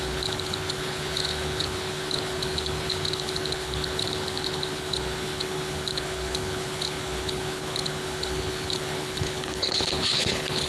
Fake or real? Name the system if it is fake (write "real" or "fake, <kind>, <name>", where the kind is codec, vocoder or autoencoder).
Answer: fake, codec, HILCodec